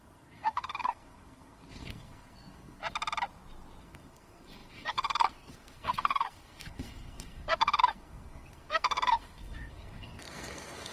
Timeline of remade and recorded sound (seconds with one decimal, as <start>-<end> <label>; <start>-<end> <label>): 0.0-2.8 remade; 2.8-3.8 recorded; 3.8-10.9 remade

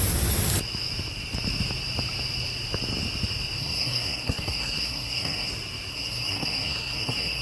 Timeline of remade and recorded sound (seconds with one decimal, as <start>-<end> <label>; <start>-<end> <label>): 0.0-3.6 recorded; 3.6-5.5 remade; 5.5-5.9 recorded; 5.9-7.4 remade

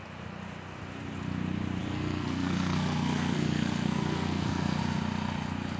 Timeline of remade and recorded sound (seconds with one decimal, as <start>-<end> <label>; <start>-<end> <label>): 0.0-1.8 recorded; 1.8-4.8 remade; 4.8-5.8 recorded

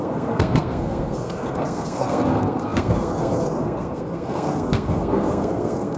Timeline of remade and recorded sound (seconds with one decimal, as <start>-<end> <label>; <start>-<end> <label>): 0.0-6.0 remade

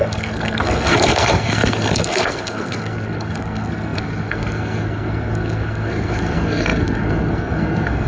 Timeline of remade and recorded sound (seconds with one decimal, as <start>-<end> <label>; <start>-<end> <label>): 0.0-8.1 remade

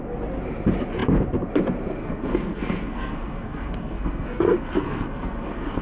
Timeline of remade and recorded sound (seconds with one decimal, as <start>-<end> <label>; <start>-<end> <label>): 0.0-2.0 recorded; 2.0-5.8 remade